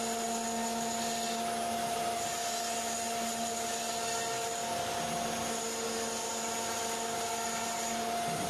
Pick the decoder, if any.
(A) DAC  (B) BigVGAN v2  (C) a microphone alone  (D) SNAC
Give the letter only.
C